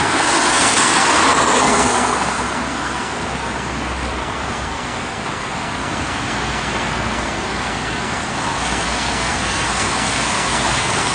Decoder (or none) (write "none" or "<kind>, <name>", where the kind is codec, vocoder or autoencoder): codec, SNAC